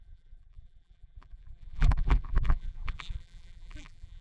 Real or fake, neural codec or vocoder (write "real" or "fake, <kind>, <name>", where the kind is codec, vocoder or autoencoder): fake, vocoder, BigVGAN v2